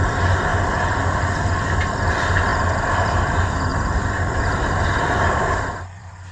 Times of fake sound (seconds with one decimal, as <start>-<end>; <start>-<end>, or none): 0.0-0.5; 2.1-6.3